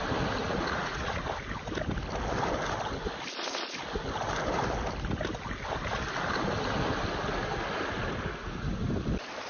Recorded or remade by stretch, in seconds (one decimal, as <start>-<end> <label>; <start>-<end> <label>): 0.0-0.4 recorded; 0.4-1.2 remade; 1.2-9.5 recorded